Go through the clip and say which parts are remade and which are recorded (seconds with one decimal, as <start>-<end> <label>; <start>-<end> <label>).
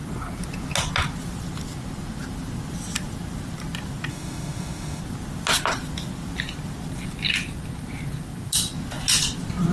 0.0-4.1 recorded; 4.1-5.0 remade; 5.0-9.7 recorded